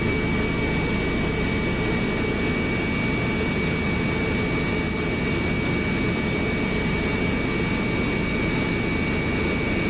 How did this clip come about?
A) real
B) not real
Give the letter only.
A